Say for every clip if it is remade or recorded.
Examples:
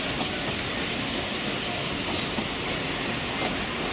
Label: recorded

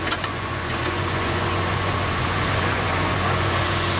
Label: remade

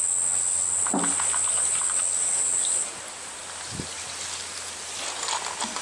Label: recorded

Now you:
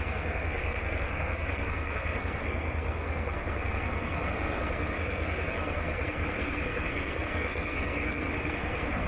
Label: remade